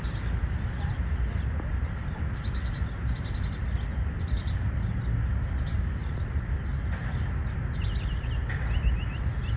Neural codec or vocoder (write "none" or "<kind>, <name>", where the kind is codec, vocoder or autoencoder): none